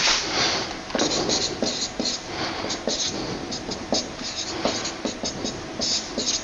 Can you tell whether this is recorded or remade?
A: recorded